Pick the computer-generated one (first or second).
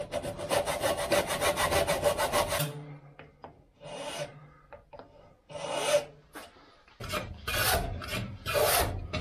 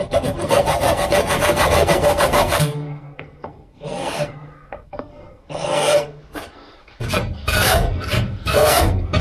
second